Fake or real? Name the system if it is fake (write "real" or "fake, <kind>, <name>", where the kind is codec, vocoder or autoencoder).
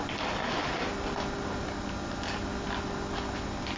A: real